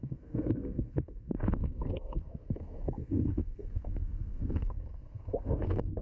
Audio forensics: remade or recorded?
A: remade